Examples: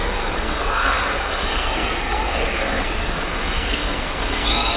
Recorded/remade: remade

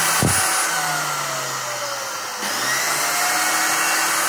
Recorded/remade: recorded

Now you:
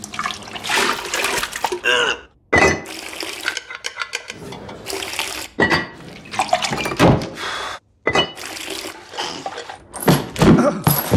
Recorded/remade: recorded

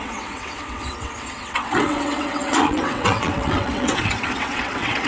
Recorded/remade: remade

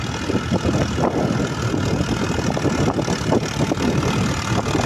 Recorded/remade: recorded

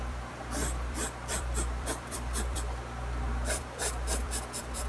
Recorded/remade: remade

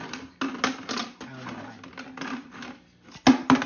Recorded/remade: recorded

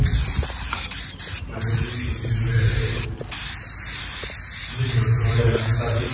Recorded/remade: recorded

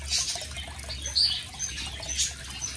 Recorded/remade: recorded